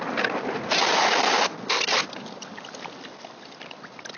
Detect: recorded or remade recorded